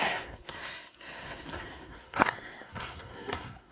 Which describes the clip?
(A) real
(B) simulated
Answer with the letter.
B